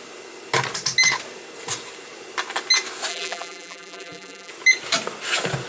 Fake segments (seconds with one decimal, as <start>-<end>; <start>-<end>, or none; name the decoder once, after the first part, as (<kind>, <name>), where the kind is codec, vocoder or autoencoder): 3.1-4.5 (vocoder, BigVGAN v2)